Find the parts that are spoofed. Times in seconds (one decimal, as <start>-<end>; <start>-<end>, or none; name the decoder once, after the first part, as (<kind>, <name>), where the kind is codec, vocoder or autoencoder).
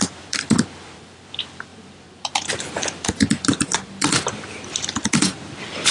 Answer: 0.0-5.9 (vocoder, BigVGAN v2)